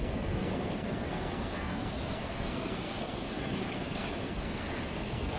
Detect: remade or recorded remade